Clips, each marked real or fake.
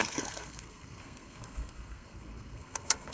fake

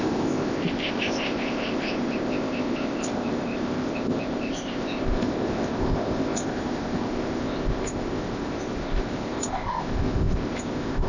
fake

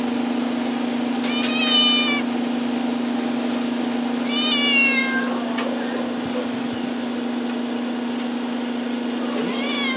real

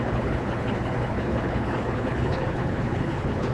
fake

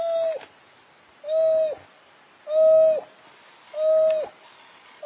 real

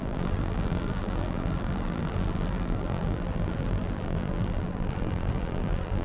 fake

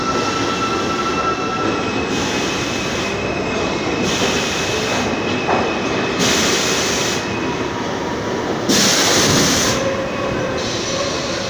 real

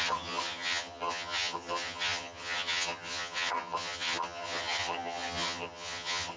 fake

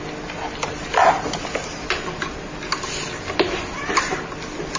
real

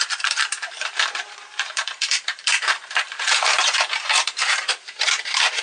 fake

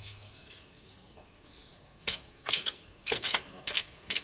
fake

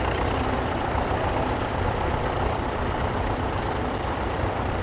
fake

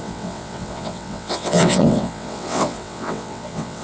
fake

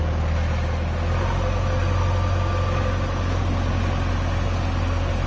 real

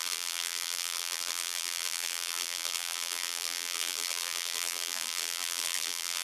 fake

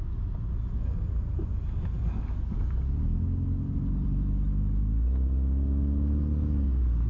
real